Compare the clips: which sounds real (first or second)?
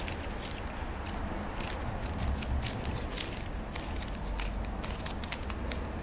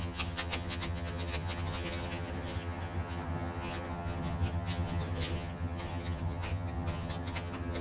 first